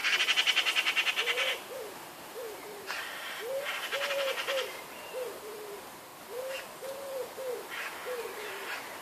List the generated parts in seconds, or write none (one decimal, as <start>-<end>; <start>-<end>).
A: 0.0-9.0